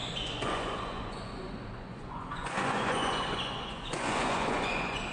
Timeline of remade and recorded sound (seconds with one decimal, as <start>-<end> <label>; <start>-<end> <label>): 0.0-5.1 remade

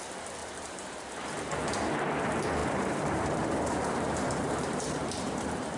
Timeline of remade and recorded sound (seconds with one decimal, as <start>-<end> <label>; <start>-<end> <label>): 0.0-0.4 recorded; 0.4-1.1 remade; 1.1-2.6 recorded; 2.6-5.8 remade

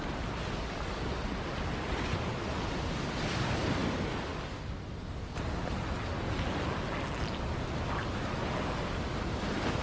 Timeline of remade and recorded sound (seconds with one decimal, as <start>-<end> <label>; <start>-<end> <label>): 0.0-9.8 recorded

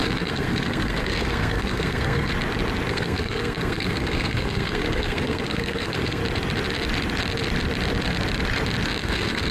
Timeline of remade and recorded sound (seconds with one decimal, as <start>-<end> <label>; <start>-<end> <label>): 0.0-2.3 remade; 2.3-2.9 recorded; 2.9-6.2 remade; 6.2-9.0 recorded; 9.0-9.5 remade

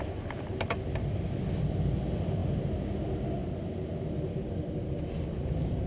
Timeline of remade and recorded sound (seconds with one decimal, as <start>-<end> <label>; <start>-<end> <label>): 0.0-5.9 recorded